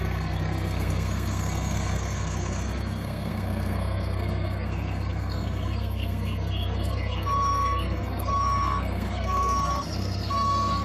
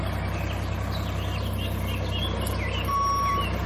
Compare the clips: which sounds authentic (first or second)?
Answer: second